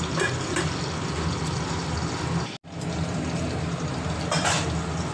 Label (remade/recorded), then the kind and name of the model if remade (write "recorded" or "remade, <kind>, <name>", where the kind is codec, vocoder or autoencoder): recorded